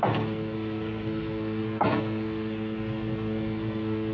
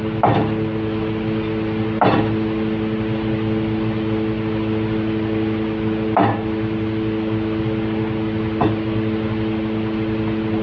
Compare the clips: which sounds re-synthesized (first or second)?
first